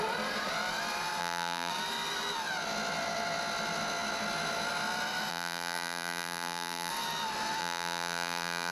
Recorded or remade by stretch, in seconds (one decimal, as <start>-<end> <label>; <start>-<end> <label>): 0.0-1.2 recorded; 1.2-1.7 remade; 1.7-5.3 recorded; 5.3-6.9 remade; 6.9-7.6 recorded; 7.6-8.7 remade